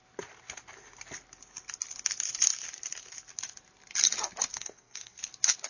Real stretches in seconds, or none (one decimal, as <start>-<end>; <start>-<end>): 0.0-4.5; 5.2-5.7